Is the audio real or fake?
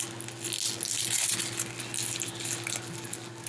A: real